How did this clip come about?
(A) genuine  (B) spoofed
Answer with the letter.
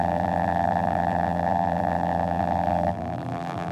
B